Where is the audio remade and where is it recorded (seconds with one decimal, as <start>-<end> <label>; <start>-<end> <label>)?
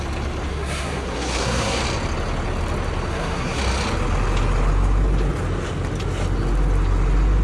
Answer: 0.0-0.5 recorded; 0.5-1.8 remade; 1.8-3.1 recorded; 3.1-3.6 remade; 3.6-7.4 recorded